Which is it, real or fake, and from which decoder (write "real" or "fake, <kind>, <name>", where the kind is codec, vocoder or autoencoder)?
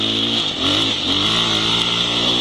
real